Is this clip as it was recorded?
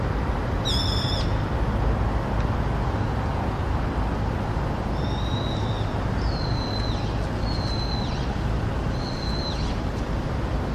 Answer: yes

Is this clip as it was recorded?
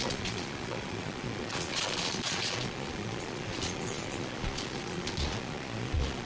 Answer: no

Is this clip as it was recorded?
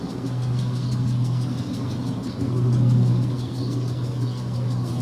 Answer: no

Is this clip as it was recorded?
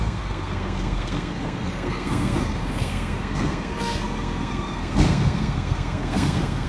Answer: no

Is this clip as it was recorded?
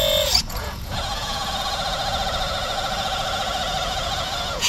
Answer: no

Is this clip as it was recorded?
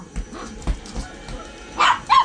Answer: yes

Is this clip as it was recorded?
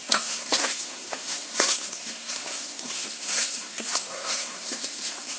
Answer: no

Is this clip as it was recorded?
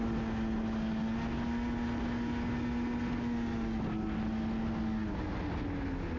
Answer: yes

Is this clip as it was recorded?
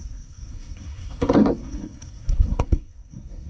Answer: no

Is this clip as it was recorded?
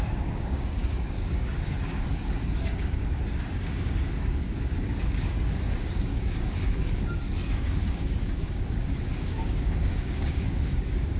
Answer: no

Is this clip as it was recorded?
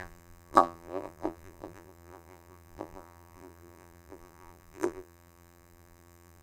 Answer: no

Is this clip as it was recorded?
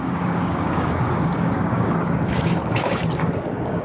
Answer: no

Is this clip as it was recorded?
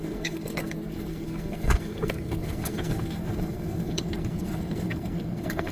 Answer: no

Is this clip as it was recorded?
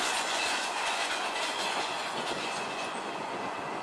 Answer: no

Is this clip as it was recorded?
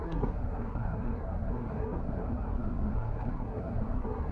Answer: no